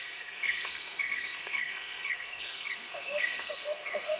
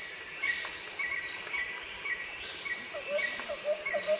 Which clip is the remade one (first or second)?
first